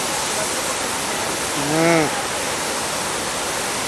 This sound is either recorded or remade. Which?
recorded